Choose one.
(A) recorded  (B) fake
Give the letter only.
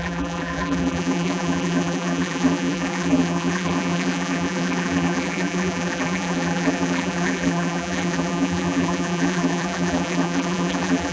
B